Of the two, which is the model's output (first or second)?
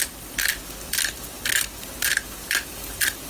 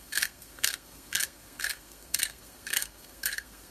second